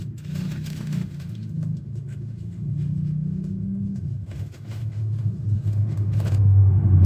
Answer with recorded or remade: remade